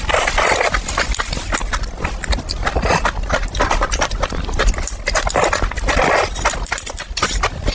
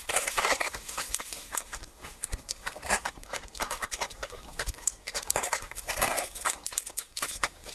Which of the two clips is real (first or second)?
first